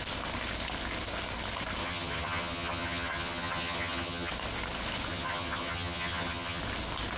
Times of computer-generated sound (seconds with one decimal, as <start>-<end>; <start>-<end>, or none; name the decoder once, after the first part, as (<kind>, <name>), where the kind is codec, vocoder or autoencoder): 1.8-4.3 (vocoder, HiFi-GAN); 5.1-6.6